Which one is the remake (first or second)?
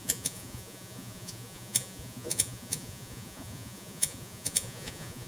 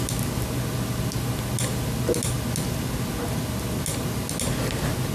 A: first